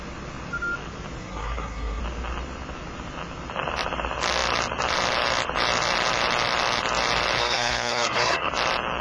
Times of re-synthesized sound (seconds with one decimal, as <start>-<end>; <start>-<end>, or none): 1.2-2.0; 7.4-8.5